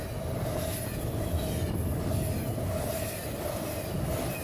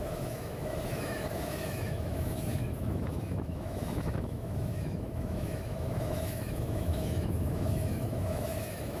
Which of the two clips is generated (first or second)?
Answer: second